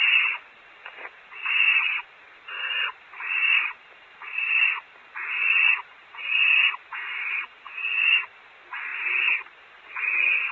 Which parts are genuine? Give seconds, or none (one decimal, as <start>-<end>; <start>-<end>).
0.0-1.7; 5.1-10.5